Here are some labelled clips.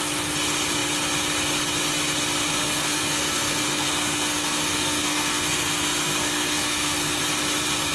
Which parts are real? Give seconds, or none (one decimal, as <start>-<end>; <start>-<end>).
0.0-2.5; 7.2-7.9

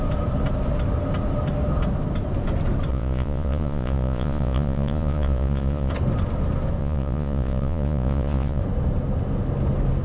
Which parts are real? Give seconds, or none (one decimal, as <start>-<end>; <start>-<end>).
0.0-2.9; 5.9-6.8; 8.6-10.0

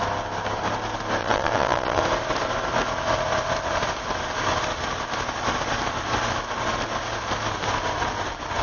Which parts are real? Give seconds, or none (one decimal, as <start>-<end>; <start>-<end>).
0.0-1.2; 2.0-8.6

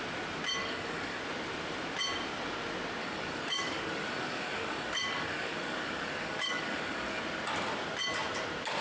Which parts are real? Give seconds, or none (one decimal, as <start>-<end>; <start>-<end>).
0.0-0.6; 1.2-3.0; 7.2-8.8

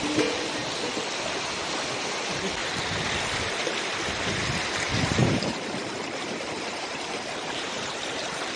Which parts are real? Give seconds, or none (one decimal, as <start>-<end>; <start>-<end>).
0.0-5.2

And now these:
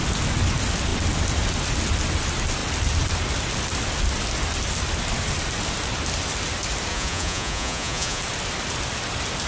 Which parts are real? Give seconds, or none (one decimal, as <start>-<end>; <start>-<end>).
0.0-6.9; 8.2-9.5

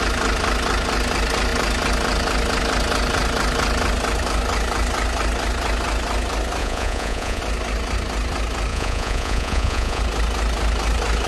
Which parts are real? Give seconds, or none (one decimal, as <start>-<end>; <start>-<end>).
0.0-6.6; 7.4-8.7; 10.0-11.3

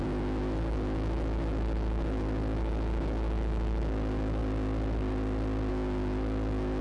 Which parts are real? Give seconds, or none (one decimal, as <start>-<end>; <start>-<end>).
4.4-5.7